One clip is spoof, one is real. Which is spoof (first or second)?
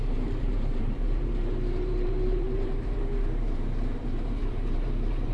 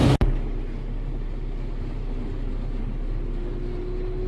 first